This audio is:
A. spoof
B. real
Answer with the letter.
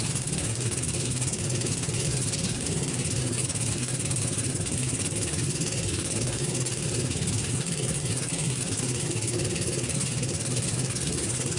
A